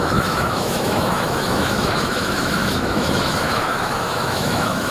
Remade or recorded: remade